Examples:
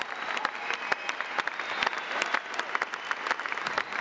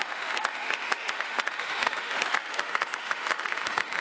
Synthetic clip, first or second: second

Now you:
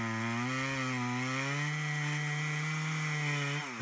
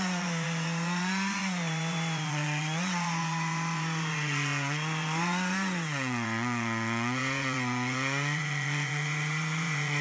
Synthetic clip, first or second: second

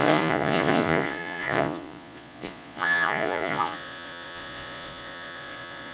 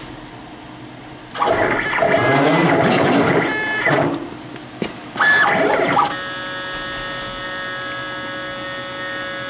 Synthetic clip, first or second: first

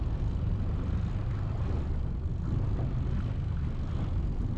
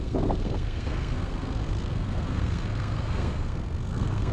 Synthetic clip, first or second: second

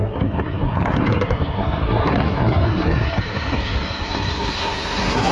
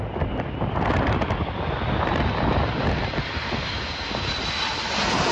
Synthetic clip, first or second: first